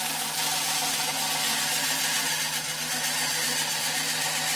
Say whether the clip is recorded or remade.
recorded